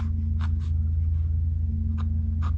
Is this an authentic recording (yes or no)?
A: yes